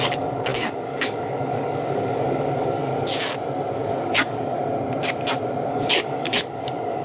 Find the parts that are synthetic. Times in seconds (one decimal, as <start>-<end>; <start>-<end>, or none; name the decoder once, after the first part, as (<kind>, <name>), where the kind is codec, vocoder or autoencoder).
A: 0.0-2.9 (codec, DAC); 3.7-4.6; 5.7-7.0